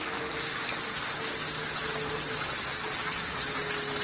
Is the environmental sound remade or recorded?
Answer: recorded